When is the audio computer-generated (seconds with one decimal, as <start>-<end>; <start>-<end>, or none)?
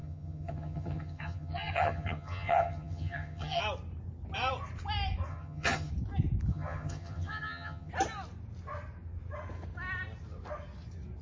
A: 0.0-3.6; 5.3-5.9; 6.5-7.9